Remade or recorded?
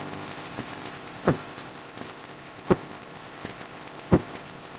remade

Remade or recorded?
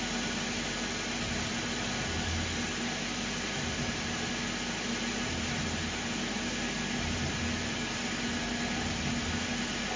recorded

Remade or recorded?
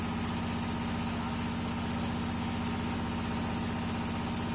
recorded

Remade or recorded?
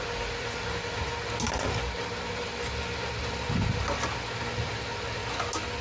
recorded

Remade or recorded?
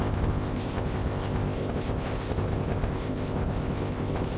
remade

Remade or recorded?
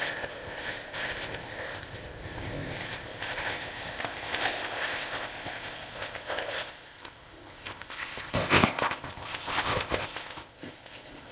remade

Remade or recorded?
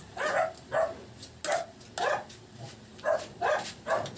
recorded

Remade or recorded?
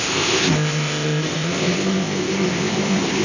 remade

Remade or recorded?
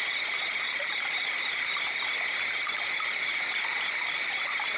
recorded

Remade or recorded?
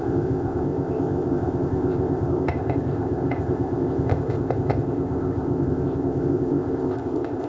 remade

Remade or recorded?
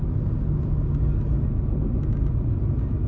recorded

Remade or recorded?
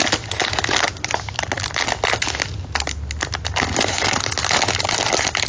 recorded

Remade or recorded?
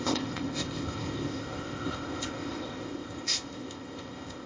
remade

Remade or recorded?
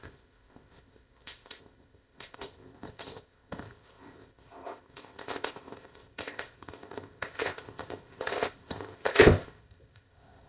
remade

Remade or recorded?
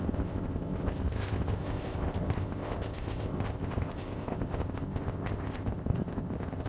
remade